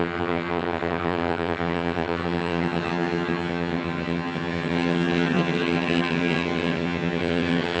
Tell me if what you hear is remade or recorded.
remade